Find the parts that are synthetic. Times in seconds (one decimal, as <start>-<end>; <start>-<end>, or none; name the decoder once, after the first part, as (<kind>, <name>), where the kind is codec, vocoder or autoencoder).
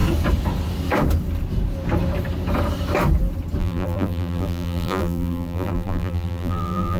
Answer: 3.6-7.0 (vocoder, BigVGAN v2)